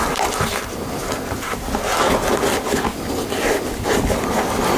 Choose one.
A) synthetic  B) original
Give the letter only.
B